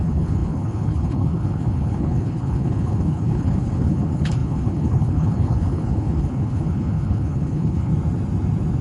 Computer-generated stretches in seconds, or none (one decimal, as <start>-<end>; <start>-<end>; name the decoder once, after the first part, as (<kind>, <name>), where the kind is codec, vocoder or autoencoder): 0.0-7.9 (codec, HILCodec)